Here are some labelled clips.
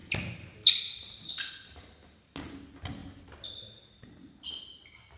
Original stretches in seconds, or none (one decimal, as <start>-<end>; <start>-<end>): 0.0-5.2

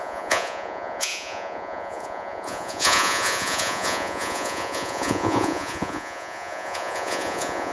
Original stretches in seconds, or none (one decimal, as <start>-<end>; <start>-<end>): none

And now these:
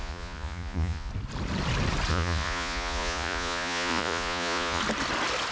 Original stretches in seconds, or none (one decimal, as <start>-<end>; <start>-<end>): 1.1-2.1; 4.8-5.5